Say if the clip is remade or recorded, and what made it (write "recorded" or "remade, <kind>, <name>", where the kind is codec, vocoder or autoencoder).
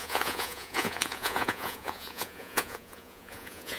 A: remade, vocoder, Vocos